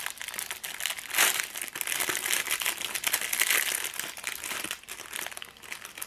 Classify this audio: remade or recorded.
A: recorded